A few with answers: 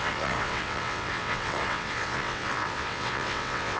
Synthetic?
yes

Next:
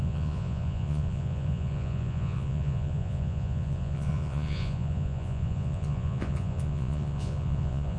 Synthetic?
yes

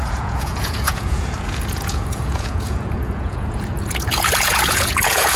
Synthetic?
yes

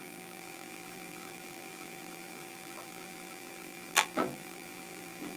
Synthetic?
yes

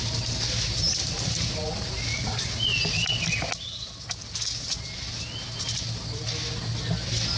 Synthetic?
no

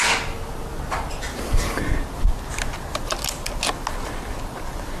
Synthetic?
no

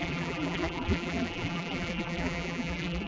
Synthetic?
yes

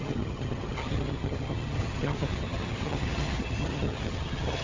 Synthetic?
yes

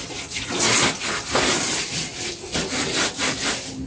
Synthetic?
no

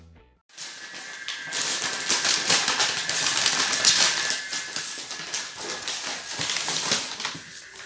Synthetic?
no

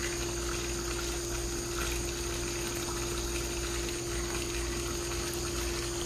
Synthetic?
no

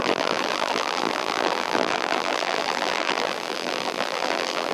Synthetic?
yes